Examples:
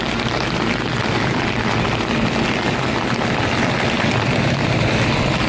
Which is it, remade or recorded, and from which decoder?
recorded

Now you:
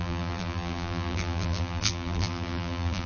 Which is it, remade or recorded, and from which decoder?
remade, vocoder, BigVGAN v2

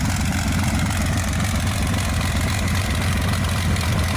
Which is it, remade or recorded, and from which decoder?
remade, vocoder, BigVGAN v2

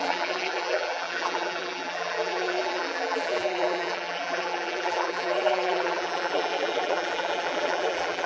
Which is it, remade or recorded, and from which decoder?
remade, vocoder, BigVGAN v2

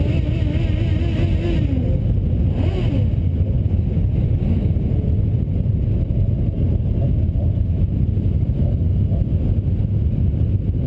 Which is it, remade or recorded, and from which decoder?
recorded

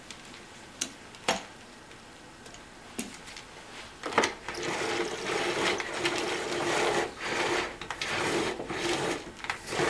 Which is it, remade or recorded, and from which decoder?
recorded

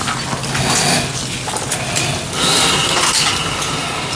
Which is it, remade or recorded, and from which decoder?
recorded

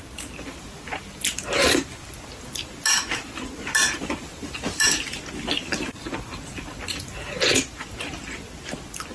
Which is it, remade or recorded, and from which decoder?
recorded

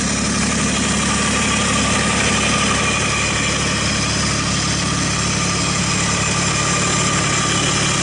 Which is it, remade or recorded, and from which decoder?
recorded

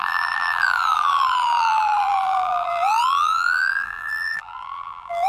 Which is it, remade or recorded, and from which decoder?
remade, vocoder, BigVGAN v2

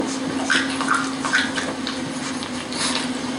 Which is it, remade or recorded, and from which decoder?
recorded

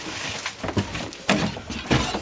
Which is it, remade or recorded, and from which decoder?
recorded